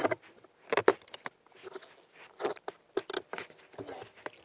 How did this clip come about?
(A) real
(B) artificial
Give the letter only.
A